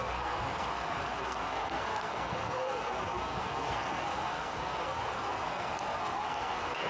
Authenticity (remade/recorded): remade